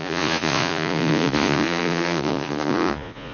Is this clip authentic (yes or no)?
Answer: no